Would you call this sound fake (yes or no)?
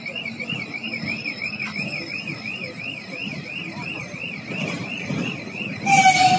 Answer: no